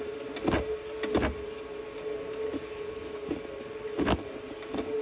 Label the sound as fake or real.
real